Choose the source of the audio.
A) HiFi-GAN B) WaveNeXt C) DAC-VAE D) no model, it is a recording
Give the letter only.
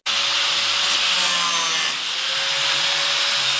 D